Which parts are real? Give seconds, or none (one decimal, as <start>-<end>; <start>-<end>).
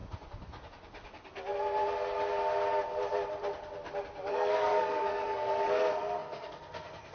0.0-4.3